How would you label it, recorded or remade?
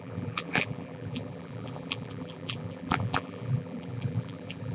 remade